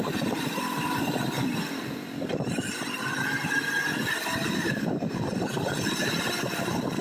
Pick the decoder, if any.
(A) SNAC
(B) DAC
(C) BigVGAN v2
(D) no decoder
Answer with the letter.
C